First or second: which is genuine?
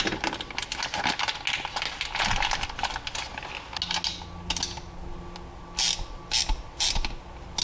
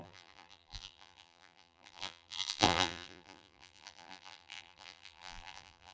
first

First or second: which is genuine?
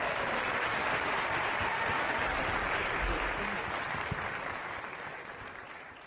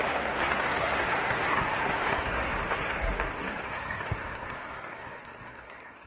first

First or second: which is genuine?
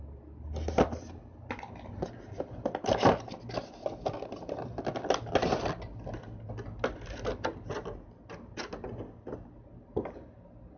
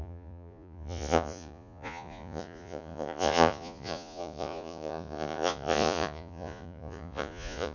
first